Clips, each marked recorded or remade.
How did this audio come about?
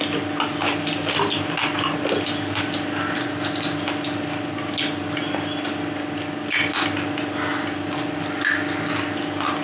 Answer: recorded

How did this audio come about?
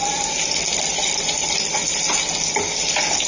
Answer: recorded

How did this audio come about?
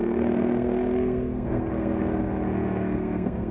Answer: remade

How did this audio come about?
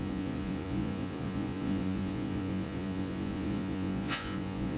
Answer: remade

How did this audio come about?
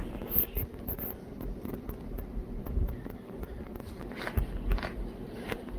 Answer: recorded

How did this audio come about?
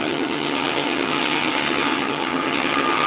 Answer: remade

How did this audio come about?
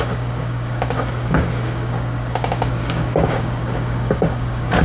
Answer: remade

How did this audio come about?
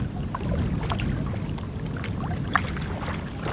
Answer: remade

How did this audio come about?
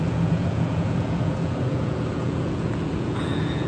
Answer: remade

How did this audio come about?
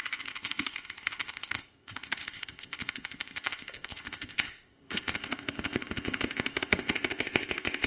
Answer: remade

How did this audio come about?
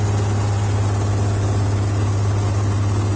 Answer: recorded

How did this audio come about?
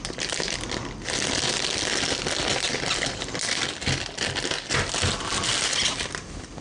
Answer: recorded